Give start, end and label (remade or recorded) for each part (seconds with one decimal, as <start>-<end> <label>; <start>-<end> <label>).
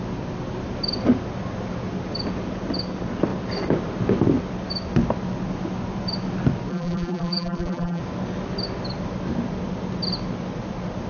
0.0-6.7 recorded; 6.7-8.0 remade; 8.0-11.1 recorded